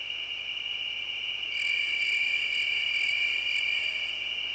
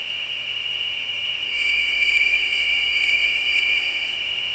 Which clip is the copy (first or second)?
second